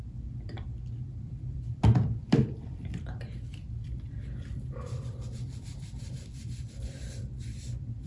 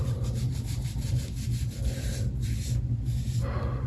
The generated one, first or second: first